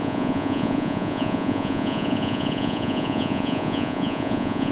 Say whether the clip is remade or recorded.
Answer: remade